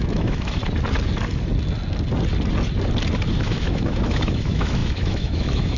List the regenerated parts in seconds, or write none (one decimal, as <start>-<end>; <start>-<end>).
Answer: 0.0-0.6; 3.4-5.8